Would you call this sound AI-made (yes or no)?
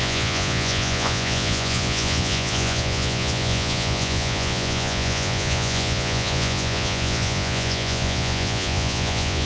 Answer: yes